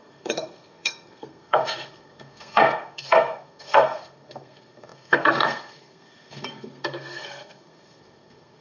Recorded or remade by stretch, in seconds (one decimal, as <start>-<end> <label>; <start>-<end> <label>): 0.0-8.6 remade